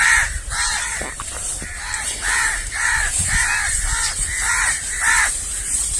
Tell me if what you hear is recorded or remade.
remade